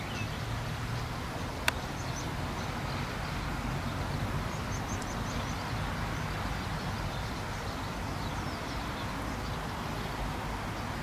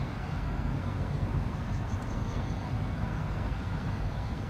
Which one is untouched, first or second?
first